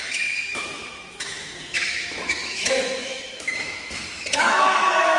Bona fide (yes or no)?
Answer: no